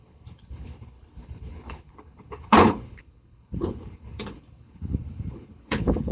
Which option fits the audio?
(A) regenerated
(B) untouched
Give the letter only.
A